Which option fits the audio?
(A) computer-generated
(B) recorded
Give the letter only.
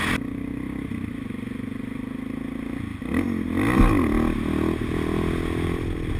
B